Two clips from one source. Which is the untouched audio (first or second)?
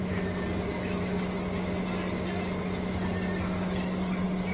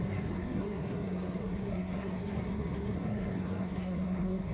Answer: first